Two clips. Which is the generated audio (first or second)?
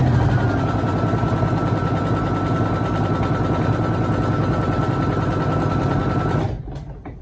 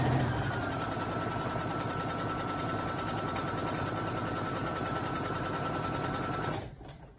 second